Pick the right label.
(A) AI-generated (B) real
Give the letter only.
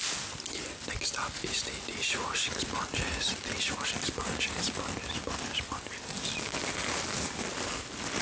B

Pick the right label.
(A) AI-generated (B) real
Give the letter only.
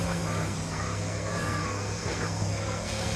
A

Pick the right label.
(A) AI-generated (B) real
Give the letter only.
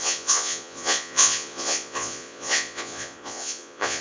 A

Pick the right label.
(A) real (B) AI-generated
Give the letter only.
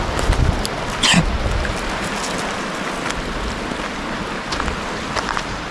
A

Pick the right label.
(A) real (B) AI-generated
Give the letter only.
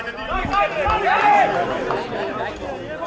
A